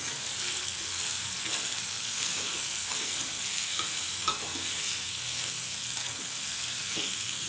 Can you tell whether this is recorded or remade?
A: remade